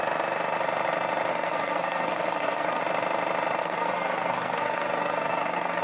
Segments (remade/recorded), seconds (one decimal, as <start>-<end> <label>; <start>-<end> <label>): 0.0-1.3 recorded; 1.3-2.8 remade; 2.8-3.6 recorded; 3.6-5.8 remade